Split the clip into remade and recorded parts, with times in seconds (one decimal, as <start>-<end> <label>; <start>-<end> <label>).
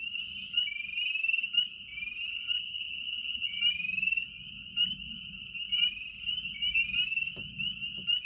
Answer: 0.0-2.3 recorded; 2.3-3.6 remade; 3.6-8.3 recorded